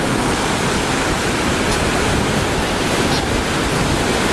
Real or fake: real